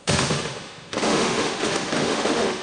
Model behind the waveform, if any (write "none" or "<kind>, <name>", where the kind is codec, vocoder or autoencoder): autoencoder, DAC-VAE